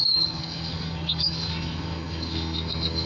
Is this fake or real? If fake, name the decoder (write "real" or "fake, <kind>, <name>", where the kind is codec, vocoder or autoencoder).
fake, codec, SNAC